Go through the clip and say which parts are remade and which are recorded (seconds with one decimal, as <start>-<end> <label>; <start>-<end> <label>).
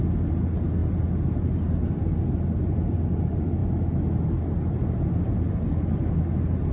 0.0-6.7 recorded